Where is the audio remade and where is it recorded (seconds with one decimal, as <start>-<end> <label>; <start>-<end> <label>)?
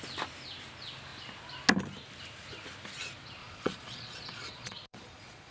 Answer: 0.0-3.4 recorded; 3.4-5.5 remade